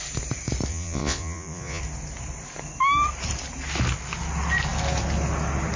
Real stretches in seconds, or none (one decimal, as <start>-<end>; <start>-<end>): 0.0-0.7; 1.8-5.8

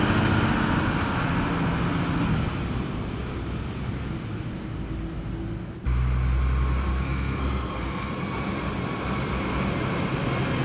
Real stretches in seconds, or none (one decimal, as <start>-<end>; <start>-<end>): 0.0-6.9; 8.1-10.6

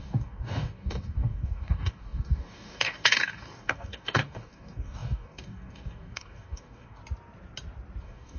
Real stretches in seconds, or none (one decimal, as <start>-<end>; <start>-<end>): 7.0-8.0